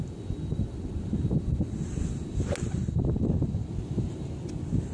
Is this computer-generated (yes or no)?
no